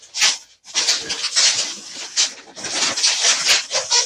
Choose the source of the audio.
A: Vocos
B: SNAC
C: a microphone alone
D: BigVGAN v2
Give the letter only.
C